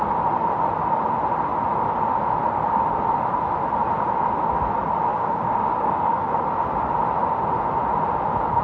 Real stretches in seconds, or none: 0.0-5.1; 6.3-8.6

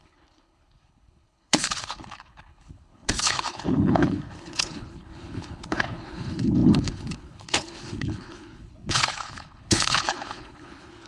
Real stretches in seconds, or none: none